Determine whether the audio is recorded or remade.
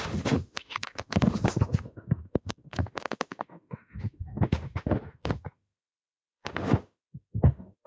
remade